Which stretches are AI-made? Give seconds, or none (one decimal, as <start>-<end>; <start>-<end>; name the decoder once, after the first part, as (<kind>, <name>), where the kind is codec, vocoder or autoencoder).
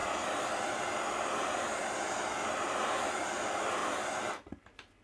3.0-5.0 (vocoder, BigVGAN v2)